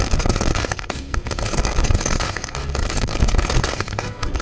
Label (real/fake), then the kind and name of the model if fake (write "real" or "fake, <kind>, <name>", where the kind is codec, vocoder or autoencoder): fake, codec, SNAC